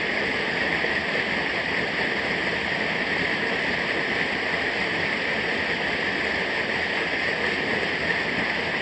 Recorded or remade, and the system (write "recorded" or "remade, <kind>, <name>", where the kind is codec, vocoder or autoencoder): recorded